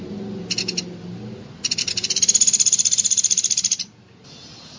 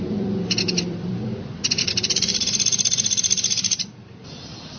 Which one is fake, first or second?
second